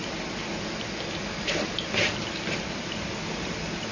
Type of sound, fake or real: real